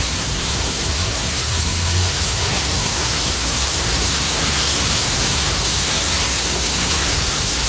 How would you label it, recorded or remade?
remade